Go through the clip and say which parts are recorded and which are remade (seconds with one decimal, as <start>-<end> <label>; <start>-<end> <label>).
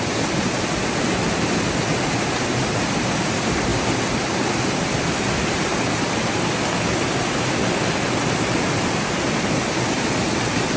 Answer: 0.0-10.8 recorded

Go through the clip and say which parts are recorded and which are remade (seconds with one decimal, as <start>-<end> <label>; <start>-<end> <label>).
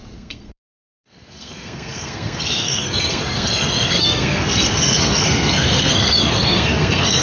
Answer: 0.0-7.2 remade